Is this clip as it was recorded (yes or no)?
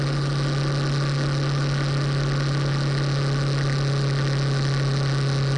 yes